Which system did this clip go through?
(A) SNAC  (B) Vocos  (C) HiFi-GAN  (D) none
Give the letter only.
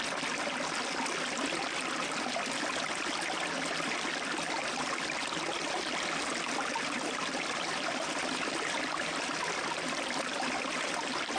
D